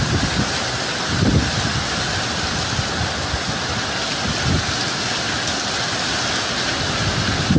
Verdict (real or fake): real